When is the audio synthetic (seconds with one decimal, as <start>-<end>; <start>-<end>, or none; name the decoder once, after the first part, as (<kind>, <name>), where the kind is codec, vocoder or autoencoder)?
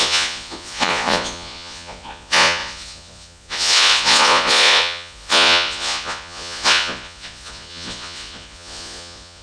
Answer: 0.0-9.4 (vocoder, Vocos)